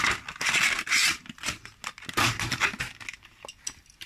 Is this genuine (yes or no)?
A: yes